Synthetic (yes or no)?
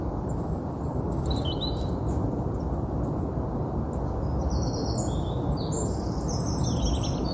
no